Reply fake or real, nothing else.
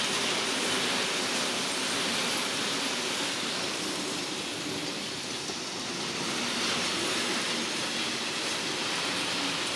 real